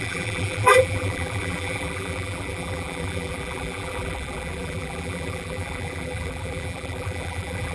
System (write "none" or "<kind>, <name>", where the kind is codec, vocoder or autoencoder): vocoder, BigVGAN v2